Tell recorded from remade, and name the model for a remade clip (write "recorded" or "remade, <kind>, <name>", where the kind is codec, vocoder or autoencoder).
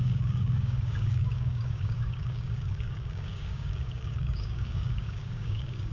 remade, codec, DAC